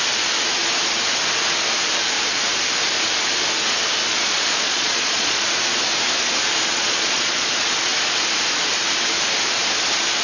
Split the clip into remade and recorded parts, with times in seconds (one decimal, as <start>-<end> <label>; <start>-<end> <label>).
0.0-4.1 recorded; 4.1-5.5 remade; 5.5-6.7 recorded; 6.7-7.5 remade; 7.5-10.2 recorded